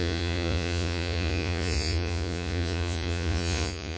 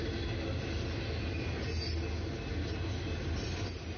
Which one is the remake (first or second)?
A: first